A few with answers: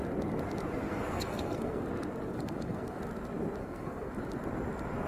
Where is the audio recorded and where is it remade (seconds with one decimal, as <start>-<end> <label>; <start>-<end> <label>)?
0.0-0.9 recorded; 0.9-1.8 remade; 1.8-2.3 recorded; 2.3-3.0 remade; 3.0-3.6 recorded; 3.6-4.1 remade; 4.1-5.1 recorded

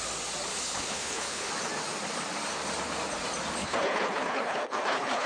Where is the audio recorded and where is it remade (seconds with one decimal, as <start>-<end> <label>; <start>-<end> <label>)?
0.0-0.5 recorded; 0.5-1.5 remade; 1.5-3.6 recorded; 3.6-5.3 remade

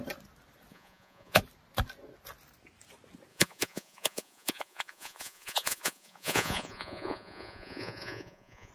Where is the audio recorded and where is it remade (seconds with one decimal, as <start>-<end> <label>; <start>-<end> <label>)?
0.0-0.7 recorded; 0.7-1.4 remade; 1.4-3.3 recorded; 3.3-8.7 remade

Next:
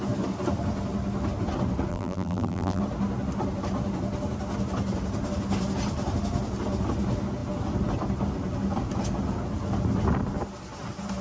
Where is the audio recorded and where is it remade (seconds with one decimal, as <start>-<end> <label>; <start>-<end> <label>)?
0.0-1.9 recorded; 1.9-2.8 remade; 2.8-11.2 recorded

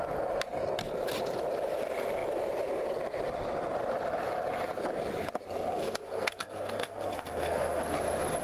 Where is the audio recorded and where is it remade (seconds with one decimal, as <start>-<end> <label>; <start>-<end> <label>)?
0.0-5.7 recorded; 5.7-7.8 remade; 7.8-8.4 recorded

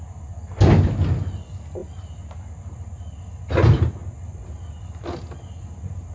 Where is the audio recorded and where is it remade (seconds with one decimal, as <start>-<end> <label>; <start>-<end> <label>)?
0.0-6.1 recorded